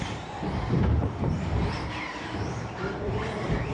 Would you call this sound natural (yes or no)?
no